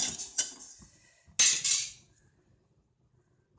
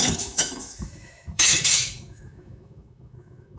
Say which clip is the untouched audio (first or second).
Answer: first